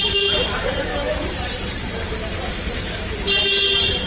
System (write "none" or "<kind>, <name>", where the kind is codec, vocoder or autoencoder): vocoder, BigVGAN v2